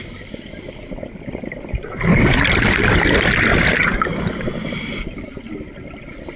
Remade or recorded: recorded